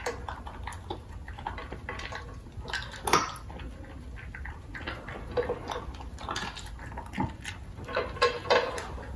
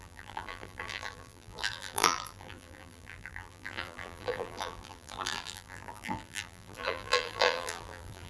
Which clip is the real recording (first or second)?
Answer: first